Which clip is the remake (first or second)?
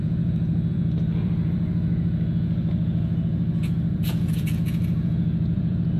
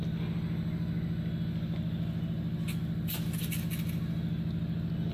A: first